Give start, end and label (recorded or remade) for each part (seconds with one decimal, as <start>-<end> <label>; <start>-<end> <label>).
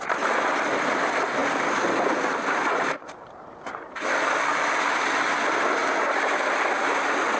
0.0-5.8 recorded; 5.8-6.6 remade; 6.6-7.4 recorded